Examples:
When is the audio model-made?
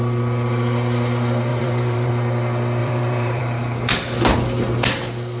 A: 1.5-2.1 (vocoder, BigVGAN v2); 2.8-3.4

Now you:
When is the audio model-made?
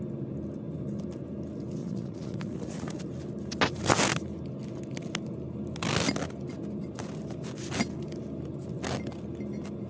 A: 1.8-3.0 (vocoder, Vocos)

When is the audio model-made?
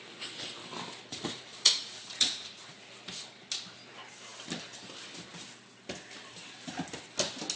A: 1.1-2.9 (vocoder, Vocos)